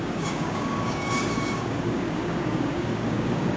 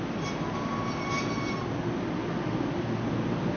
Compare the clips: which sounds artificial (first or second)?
first